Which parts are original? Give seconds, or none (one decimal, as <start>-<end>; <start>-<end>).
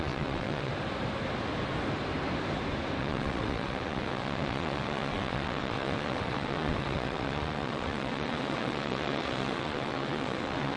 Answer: 0.7-3.0